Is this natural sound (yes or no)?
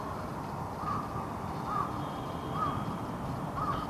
no